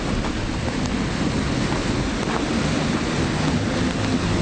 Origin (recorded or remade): recorded